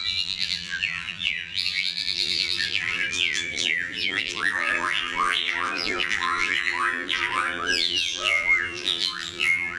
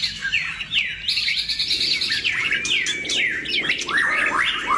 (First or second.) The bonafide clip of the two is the second